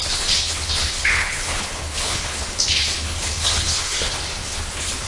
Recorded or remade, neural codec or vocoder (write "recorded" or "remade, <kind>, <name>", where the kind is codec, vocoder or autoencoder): remade, codec, HILCodec